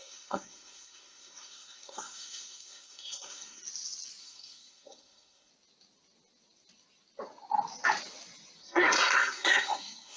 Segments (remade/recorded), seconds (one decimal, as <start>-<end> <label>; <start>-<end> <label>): 0.0-3.6 remade; 3.6-4.2 recorded; 4.2-5.5 remade; 5.5-8.6 recorded; 8.6-10.2 remade